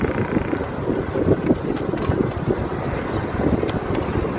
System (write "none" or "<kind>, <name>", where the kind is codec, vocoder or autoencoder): none